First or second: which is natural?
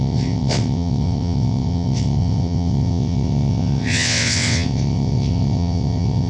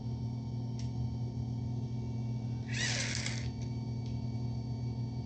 second